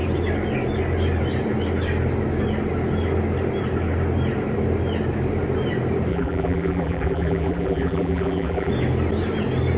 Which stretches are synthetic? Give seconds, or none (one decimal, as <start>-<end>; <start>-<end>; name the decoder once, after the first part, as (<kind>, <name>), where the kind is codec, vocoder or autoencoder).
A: 6.1-8.7 (vocoder, BigVGAN v2)